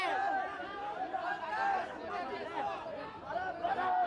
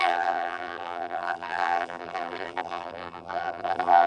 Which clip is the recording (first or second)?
first